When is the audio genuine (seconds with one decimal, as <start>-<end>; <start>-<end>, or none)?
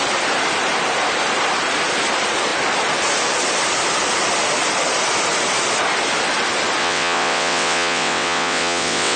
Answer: 0.0-6.8